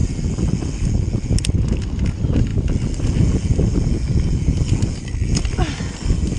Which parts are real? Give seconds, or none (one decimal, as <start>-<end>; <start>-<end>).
0.0-6.4